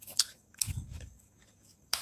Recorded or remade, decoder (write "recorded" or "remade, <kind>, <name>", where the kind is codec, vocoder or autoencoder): remade, codec, DAC